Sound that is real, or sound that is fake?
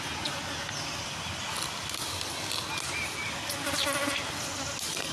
real